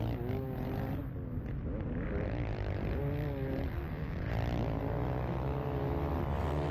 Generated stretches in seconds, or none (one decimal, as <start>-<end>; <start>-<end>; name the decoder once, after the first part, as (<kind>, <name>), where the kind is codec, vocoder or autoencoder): none